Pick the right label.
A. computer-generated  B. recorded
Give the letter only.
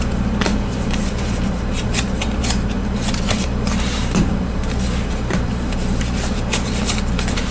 A